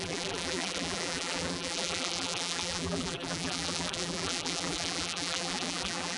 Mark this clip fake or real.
fake